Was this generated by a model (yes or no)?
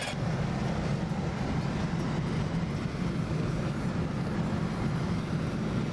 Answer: no